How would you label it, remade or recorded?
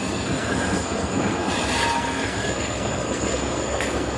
remade